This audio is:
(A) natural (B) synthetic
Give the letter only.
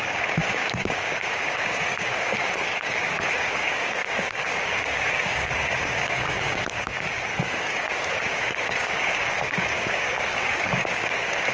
B